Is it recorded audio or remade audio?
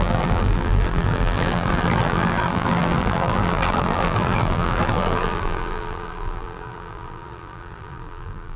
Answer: remade